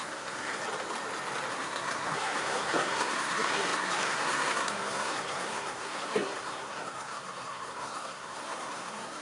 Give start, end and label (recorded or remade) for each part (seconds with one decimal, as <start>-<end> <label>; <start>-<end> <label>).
0.0-0.6 remade; 0.6-1.5 recorded; 1.5-9.2 remade